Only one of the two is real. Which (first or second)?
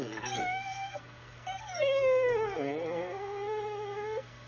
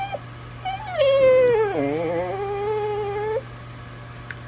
second